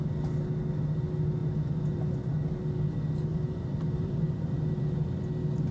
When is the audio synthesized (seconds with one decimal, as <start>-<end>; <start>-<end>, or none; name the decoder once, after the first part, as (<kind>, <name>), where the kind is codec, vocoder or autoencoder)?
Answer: 1.4-2.0 (vocoder, BigVGAN v2); 3.3-5.0